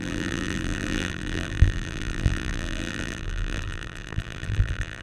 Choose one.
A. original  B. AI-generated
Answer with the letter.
B